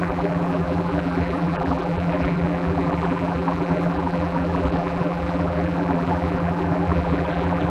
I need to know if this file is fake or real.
fake